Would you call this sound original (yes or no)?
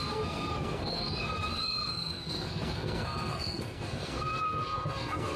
no